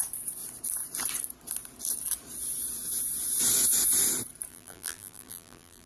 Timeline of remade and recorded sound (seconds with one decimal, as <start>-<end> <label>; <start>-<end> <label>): 0.0-4.5 recorded; 4.5-5.9 remade